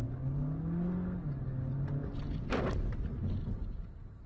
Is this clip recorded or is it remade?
recorded